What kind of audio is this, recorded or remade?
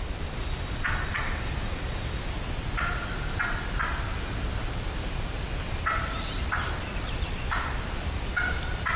recorded